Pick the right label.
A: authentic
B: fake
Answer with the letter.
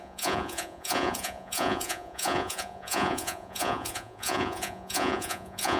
B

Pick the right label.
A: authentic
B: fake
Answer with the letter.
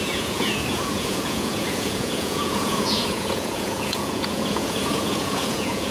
B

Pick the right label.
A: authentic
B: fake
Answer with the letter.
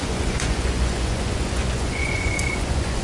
B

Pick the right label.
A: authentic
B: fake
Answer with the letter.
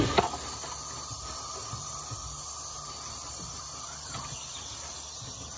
A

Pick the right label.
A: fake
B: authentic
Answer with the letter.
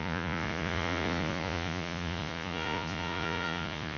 A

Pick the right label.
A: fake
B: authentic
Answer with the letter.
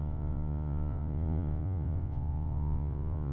A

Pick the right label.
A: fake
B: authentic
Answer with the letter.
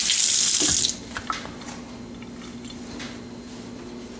B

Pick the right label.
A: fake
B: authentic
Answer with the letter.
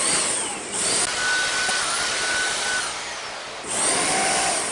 B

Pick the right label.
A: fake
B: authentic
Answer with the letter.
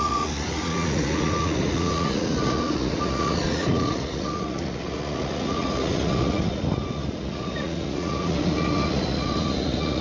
A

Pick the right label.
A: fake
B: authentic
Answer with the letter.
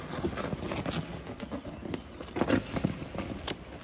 B